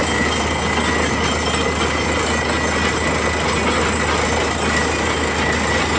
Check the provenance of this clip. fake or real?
real